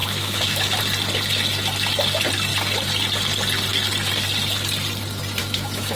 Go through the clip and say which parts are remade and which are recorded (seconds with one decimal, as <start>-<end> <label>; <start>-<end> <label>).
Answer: 0.0-0.8 remade; 0.8-5.4 recorded; 5.4-6.0 remade